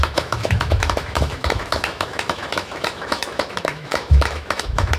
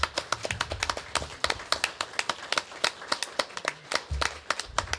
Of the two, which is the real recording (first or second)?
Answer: second